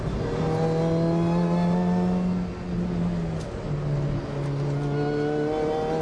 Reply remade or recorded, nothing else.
recorded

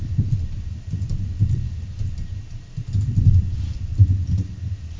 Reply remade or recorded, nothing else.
recorded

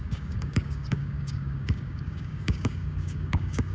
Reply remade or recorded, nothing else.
remade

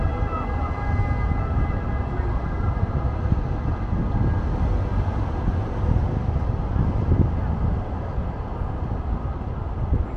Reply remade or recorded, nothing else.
recorded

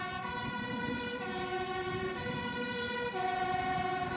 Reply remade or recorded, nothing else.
recorded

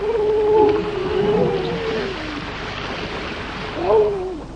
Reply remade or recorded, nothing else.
recorded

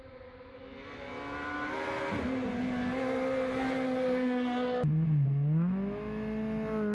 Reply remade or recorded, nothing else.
recorded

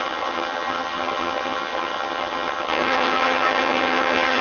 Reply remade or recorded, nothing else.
remade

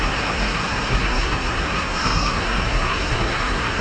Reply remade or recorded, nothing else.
remade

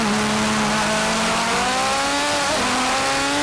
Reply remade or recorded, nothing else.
recorded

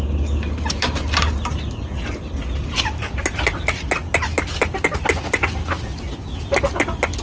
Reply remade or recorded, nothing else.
recorded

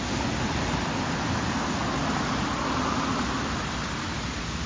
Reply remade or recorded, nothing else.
recorded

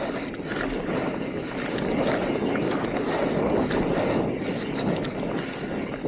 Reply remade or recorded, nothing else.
recorded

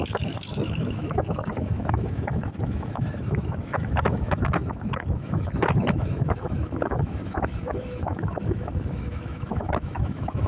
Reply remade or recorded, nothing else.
remade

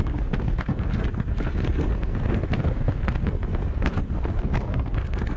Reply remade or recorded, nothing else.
remade